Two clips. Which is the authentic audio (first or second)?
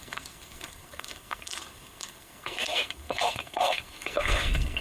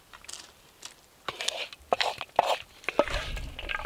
second